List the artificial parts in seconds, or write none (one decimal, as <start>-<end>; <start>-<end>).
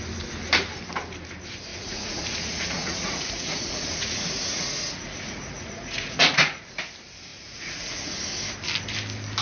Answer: 1.7-6.7; 7.3-8.2